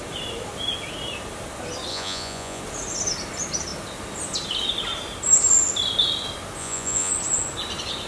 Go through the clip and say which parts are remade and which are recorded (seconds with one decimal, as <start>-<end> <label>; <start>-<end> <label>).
0.0-1.9 recorded; 1.9-2.6 remade; 2.6-6.6 recorded; 6.6-7.1 remade; 7.1-8.1 recorded